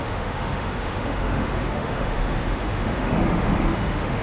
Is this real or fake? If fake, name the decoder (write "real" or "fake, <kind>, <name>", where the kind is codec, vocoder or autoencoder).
fake, autoencoder, DAC-VAE